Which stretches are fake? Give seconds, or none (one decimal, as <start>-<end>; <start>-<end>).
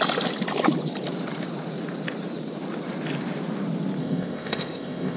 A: 4.0-5.2